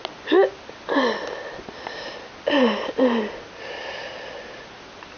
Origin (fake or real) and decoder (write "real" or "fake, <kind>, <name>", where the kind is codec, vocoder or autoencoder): real